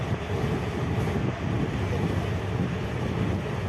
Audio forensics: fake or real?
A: real